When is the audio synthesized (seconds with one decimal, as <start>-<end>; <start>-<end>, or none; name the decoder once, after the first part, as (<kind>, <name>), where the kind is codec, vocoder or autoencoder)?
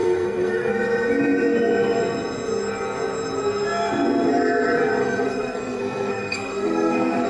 0.0-0.7 (codec, SNAC); 5.0-7.3